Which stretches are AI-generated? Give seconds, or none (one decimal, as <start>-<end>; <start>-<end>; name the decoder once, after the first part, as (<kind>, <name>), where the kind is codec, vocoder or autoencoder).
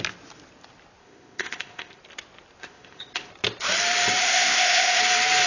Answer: 1.0-2.0 (codec, ZipCodec); 2.6-3.3; 4.2-5.0